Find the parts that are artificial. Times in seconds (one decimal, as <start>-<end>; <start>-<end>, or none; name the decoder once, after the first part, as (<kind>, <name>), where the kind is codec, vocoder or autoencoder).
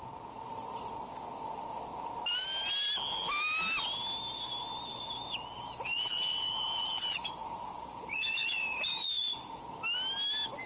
4.9-9.6 (vocoder, Vocos)